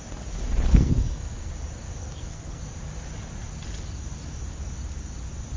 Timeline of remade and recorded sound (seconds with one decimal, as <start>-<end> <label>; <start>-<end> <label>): 0.0-0.7 recorded; 0.7-1.5 remade; 1.5-2.0 recorded; 2.0-2.6 remade; 2.6-5.6 recorded